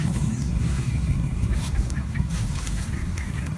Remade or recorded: remade